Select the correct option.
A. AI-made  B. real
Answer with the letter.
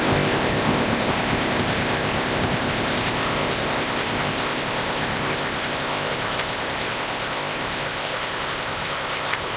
A